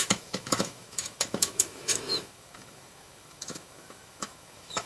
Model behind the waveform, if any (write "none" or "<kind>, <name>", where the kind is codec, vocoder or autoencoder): autoencoder, DAC-VAE